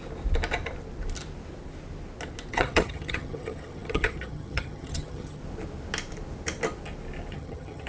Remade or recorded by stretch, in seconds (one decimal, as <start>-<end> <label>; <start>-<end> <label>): 0.0-2.5 recorded; 2.5-5.4 remade; 5.4-7.3 recorded; 7.3-7.9 remade